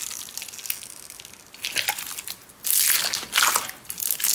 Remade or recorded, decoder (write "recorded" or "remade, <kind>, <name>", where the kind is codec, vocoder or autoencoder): recorded